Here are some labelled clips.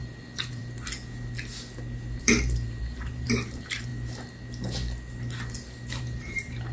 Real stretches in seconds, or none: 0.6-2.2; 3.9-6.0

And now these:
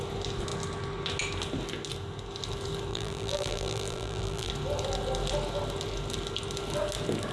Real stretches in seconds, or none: 0.0-2.9; 4.5-7.3

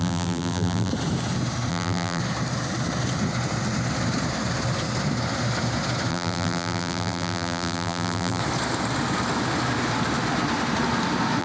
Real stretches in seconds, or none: 0.9-1.7; 2.2-6.1; 8.4-11.4

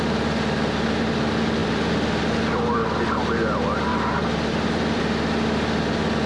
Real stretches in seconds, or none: 0.0-1.6; 2.2-3.9; 5.0-6.3

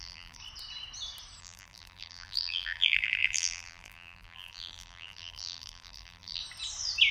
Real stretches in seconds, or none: 0.4-1.4; 6.4-7.1

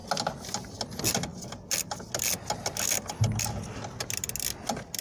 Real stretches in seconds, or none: 0.0-5.0

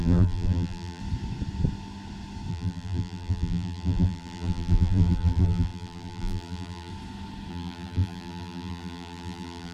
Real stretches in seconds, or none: 1.0-2.5; 6.9-7.5